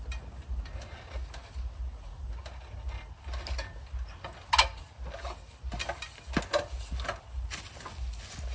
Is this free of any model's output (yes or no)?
yes